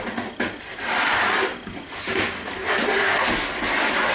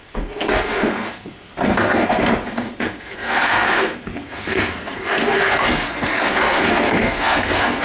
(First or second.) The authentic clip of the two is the first